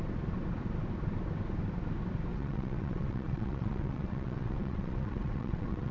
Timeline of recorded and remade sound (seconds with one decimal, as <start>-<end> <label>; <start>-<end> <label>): 0.0-2.3 recorded; 2.3-5.9 remade